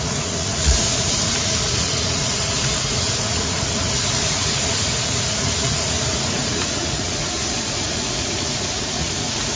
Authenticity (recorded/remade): remade